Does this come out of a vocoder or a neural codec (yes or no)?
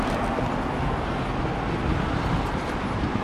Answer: no